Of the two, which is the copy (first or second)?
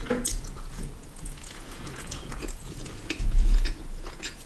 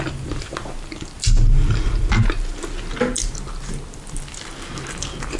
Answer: first